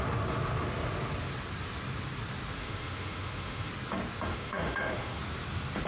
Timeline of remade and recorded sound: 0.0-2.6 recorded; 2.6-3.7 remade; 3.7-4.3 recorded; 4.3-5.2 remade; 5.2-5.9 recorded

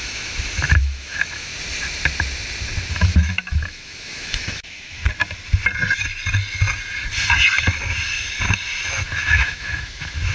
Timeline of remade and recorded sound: 0.0-1.5 remade; 1.5-2.9 recorded; 2.9-5.0 remade; 5.0-8.9 recorded; 8.9-10.3 remade

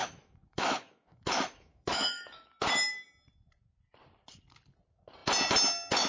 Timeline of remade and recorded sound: 0.0-2.5 remade; 2.5-6.1 recorded